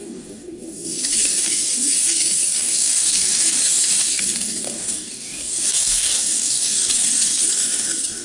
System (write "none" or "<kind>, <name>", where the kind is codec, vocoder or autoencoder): codec, DAC